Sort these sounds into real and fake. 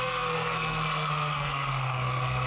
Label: fake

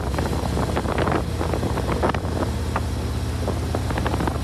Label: real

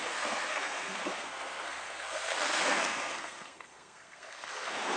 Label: fake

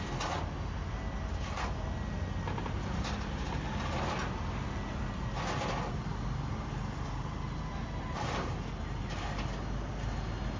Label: real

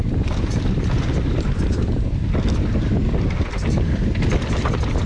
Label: real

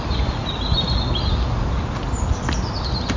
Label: real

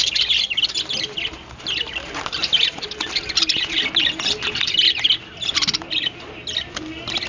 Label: real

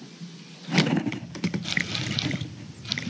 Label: real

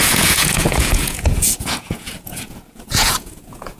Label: fake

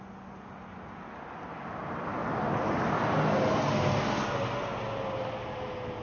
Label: real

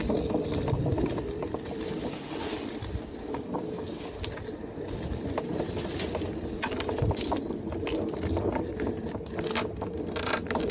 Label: real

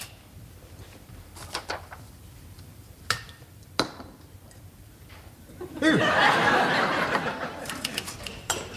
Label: fake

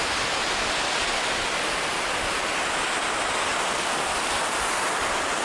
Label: real